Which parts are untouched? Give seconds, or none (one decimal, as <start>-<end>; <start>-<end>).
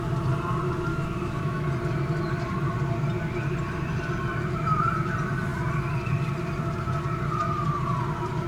0.0-0.9; 1.6-8.5